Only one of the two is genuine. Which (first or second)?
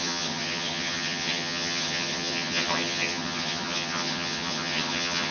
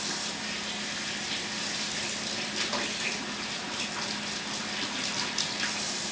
second